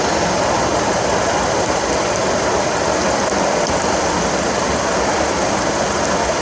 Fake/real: real